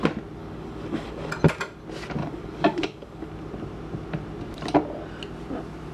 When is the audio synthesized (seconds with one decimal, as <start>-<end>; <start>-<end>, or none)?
0.4-1.3; 2.2-3.3